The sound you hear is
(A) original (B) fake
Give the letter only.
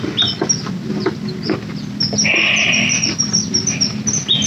A